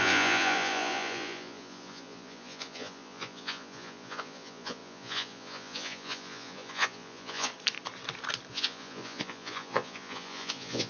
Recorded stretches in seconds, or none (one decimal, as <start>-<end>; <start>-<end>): 7.5-8.5